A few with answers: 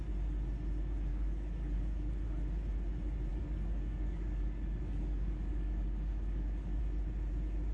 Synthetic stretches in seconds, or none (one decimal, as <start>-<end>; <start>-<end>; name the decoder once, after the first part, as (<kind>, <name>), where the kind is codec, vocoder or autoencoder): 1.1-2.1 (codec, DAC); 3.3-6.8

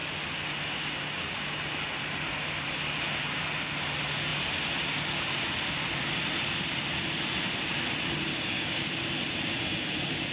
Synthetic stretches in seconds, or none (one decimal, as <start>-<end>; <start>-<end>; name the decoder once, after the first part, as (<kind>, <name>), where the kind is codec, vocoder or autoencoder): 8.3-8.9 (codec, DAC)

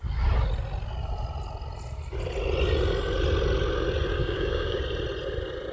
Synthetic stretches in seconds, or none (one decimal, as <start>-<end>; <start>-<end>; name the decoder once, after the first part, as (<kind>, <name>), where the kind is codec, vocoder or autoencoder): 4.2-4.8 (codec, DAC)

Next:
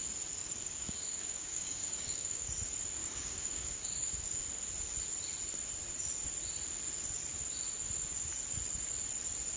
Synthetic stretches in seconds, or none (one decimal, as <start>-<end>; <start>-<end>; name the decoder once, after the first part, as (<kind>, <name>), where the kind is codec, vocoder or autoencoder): 0.4-2.5 (codec, DAC); 3.0-4.4

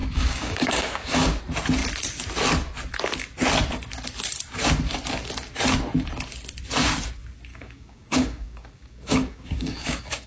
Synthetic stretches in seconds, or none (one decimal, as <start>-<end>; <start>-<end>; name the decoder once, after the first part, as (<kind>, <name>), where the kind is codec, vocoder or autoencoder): 0.0-1.4 (codec, DAC); 7.5-10.3